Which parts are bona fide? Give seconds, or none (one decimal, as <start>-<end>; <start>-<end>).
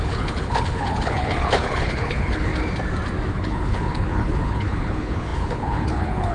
2.5-3.3